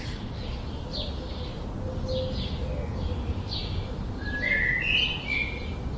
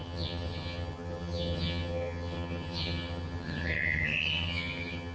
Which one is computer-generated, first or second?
second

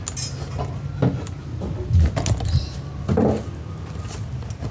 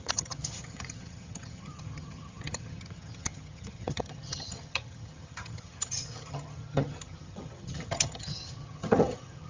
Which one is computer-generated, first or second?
second